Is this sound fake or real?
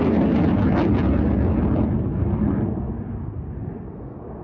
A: real